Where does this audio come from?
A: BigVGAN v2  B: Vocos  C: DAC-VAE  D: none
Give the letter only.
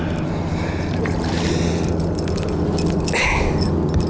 D